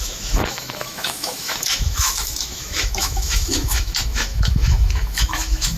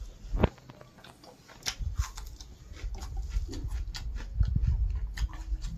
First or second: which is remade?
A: first